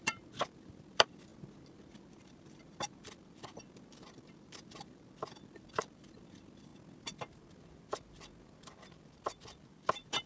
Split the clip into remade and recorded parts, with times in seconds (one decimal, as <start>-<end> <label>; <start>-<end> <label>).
0.0-1.3 remade; 1.3-1.8 recorded; 1.8-6.7 remade; 6.7-8.7 recorded; 8.7-10.3 remade